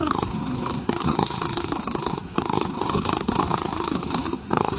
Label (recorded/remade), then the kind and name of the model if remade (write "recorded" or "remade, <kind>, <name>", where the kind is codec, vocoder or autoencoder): remade, codec, SNAC